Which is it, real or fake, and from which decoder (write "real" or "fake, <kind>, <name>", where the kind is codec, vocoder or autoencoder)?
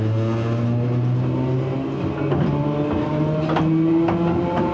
real